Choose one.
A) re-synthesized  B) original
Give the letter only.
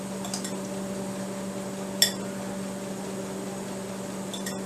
B